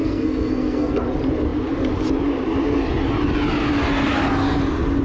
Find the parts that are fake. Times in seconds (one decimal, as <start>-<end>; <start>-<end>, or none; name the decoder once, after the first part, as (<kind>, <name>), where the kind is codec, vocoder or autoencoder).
0.0-1.0 (codec, SNAC)